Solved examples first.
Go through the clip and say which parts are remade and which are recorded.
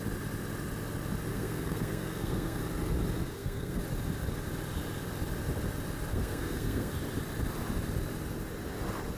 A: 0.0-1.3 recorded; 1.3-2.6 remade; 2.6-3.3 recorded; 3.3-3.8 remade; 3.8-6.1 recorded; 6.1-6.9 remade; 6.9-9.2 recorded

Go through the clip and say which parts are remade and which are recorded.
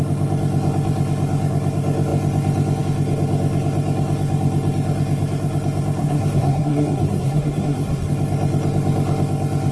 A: 0.0-6.0 recorded; 6.0-8.1 remade; 8.1-9.7 recorded